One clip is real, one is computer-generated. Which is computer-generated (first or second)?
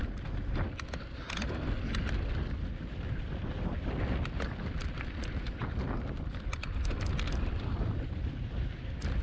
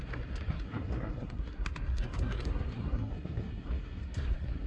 second